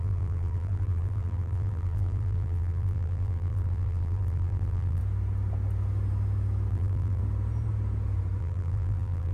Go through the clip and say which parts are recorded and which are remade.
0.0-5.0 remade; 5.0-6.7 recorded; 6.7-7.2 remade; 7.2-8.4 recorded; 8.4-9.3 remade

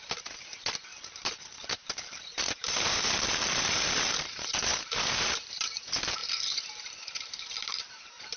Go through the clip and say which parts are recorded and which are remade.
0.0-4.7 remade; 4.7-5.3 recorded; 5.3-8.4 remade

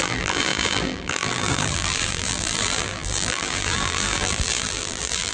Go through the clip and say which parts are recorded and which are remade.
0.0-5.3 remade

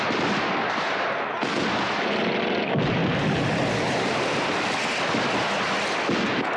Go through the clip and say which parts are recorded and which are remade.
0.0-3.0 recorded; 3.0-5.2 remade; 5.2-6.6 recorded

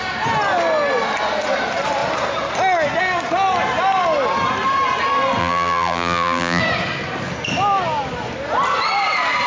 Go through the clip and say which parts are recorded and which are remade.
0.0-5.4 recorded; 5.4-6.6 remade; 6.6-9.5 recorded

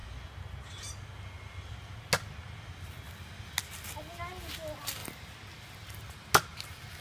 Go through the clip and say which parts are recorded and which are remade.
0.0-5.0 recorded; 5.0-6.1 remade; 6.1-7.0 recorded